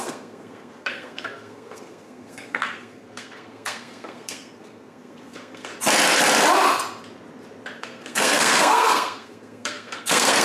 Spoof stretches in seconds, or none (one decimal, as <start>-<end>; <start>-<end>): 0.0-5.7; 7.8-10.4